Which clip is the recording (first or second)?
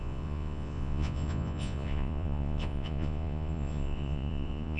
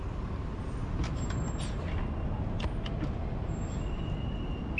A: second